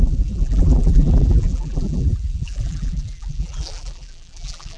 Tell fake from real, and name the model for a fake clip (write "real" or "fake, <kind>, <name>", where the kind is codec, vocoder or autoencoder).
fake, vocoder, BigVGAN v2